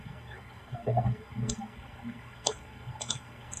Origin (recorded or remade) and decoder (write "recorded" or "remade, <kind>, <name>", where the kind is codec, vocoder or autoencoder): remade, codec, SNAC